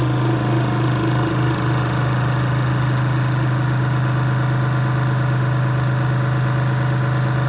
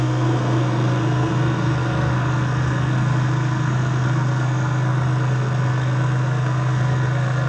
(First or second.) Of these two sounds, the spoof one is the second